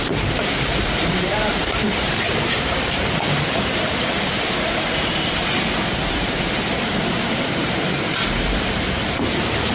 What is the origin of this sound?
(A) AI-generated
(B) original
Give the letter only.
A